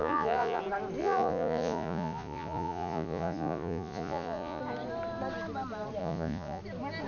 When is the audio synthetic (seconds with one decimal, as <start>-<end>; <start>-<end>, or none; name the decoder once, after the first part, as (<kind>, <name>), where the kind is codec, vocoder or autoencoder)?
0.0-0.6 (vocoder, Vocos); 1.0-4.6; 6.0-6.6